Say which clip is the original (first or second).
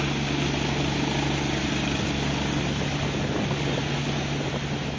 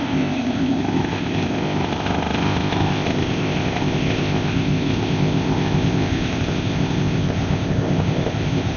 first